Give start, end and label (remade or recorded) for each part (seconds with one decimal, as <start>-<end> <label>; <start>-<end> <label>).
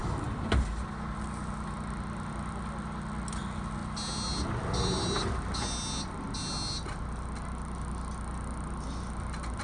0.0-9.6 recorded